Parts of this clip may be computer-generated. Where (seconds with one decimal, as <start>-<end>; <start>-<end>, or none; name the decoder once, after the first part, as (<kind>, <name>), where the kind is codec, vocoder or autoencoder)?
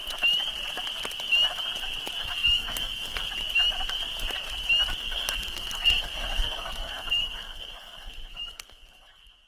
2.2-3.3 (codec, SNAC); 5.0-9.5